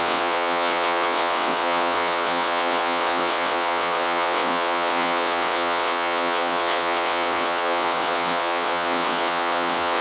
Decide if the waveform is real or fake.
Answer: fake